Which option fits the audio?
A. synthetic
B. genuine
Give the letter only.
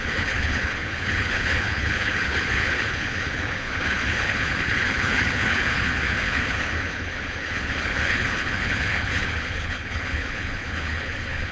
A